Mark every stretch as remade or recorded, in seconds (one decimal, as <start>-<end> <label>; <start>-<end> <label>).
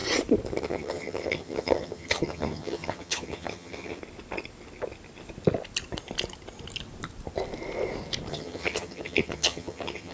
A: 0.0-0.6 recorded; 0.6-4.0 remade; 4.0-8.3 recorded; 8.3-10.1 remade